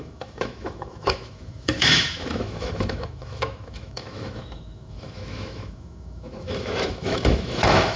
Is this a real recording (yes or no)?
no